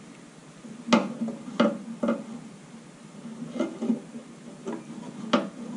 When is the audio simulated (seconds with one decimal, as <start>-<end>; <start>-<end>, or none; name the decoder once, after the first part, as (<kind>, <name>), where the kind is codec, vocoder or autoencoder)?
none